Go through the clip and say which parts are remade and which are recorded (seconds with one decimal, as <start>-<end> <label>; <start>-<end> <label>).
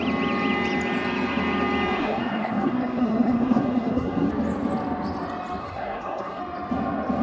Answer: 0.0-2.0 recorded; 2.0-4.3 remade; 4.3-5.6 recorded; 5.6-6.4 remade; 6.4-7.2 recorded